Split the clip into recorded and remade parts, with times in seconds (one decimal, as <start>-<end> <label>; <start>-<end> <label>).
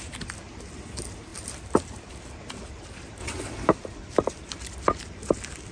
0.0-3.2 recorded; 3.2-3.7 remade; 3.7-5.7 recorded